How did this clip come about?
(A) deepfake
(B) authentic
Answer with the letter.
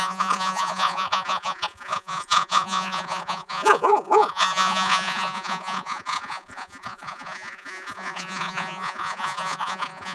A